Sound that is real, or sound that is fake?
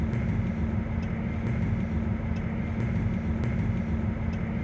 real